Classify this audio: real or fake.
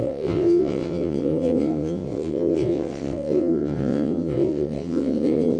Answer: fake